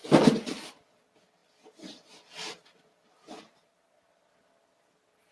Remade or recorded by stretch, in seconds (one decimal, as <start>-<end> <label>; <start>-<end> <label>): 0.0-1.4 recorded; 1.4-2.8 remade; 2.8-5.3 recorded